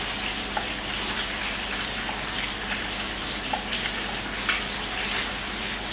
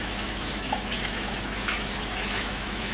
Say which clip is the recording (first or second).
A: first